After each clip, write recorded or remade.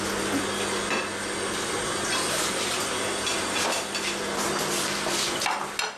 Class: recorded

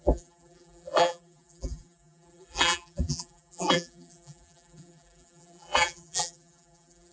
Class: remade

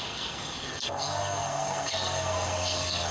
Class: remade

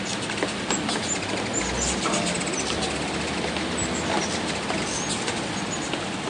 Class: recorded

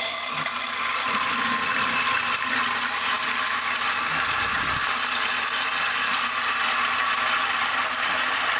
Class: recorded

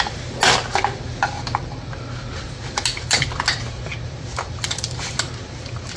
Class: recorded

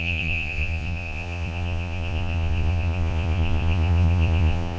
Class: remade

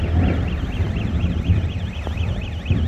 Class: recorded